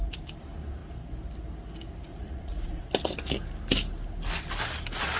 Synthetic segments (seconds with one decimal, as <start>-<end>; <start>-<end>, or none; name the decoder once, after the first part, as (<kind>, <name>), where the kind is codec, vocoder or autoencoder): 2.1-2.8 (vocoder, Vocos)